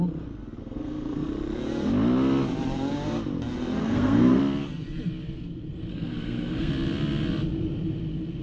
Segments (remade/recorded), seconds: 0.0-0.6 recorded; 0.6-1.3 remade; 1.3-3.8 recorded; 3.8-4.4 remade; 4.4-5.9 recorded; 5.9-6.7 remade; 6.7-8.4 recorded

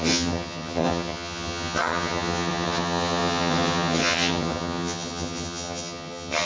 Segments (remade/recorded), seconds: 0.0-6.4 remade

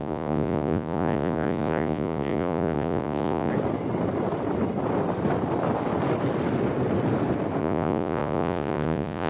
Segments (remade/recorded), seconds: 0.0-3.5 remade; 3.5-7.6 recorded; 7.6-9.3 remade

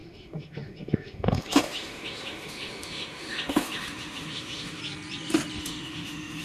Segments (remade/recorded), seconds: 0.0-4.8 remade; 4.8-5.6 recorded; 5.6-6.4 remade

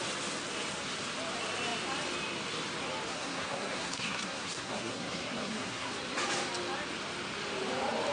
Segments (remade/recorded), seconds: 0.0-3.1 recorded; 3.1-5.9 remade; 5.9-8.1 recorded

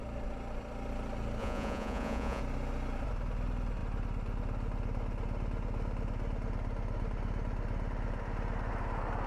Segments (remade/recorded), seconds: 0.0-1.4 recorded; 1.4-2.4 remade; 2.4-9.3 recorded